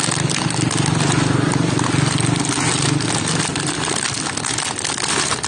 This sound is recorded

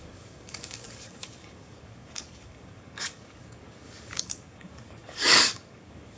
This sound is remade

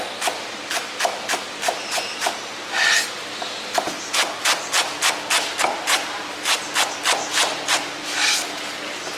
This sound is recorded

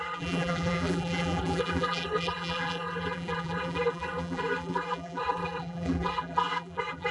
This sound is remade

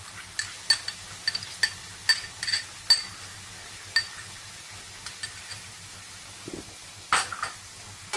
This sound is recorded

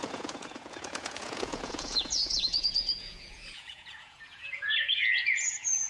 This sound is remade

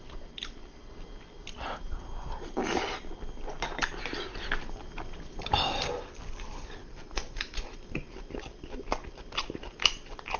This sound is recorded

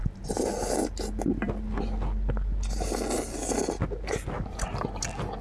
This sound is recorded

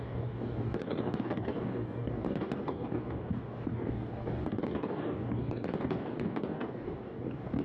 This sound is remade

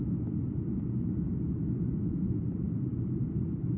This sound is recorded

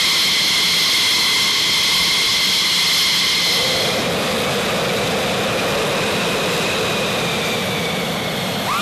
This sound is recorded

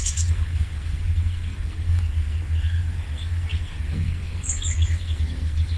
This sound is remade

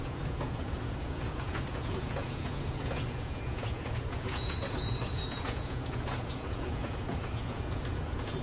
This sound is remade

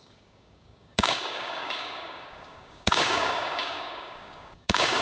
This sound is remade